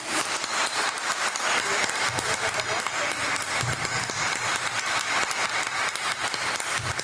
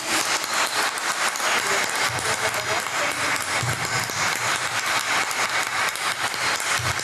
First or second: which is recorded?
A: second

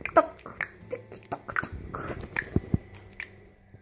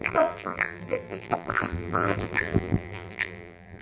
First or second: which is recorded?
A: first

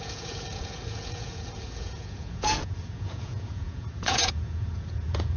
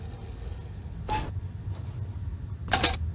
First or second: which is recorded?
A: second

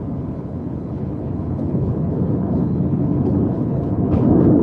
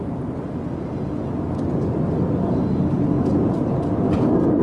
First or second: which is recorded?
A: second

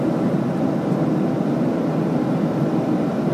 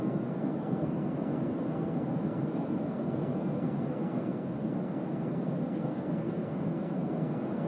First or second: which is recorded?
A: first